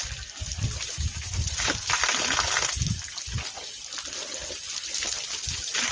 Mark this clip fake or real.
real